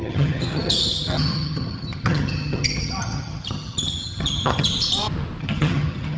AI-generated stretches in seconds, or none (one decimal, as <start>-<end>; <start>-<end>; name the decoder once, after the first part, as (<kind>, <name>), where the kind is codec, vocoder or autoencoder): 0.0-4.7 (vocoder, HiFi-GAN); 5.4-6.2